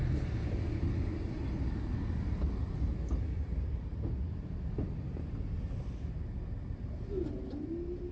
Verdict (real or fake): real